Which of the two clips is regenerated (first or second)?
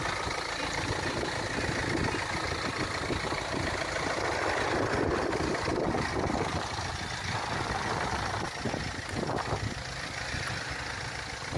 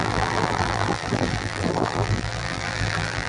second